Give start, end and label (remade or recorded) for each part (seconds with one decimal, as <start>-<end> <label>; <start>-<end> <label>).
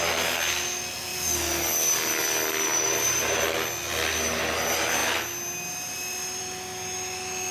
0.0-7.5 recorded